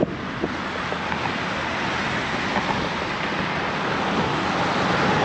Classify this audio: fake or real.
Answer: real